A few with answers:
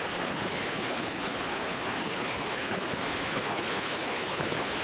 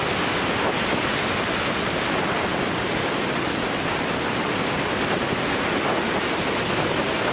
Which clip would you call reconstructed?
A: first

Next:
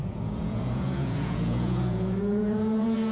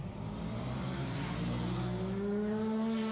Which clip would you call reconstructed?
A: first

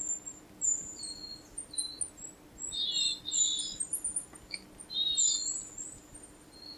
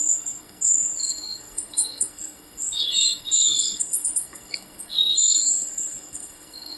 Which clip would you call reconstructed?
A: second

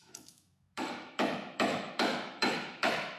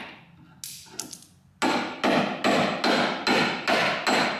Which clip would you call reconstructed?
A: first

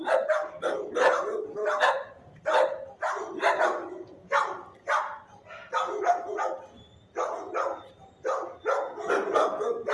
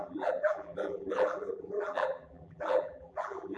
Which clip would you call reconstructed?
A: second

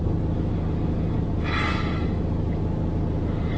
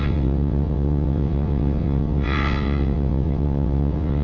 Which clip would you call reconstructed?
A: second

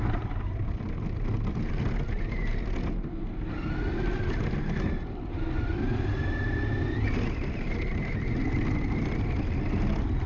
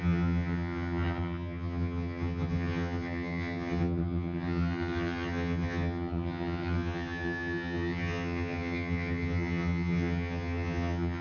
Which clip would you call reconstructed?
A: second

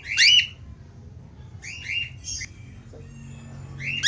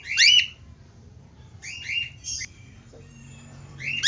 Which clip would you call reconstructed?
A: second